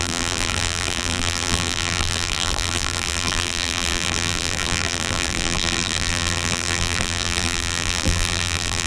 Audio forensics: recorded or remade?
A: remade